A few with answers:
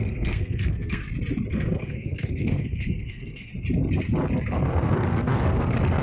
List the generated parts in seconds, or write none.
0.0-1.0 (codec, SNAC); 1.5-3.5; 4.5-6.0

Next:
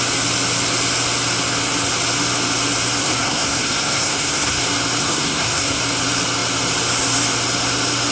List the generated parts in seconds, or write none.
3.0-4.6 (codec, SNAC); 5.0-5.8